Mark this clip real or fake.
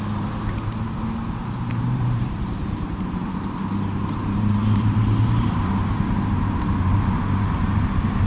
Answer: fake